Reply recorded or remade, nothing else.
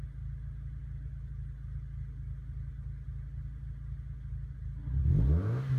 recorded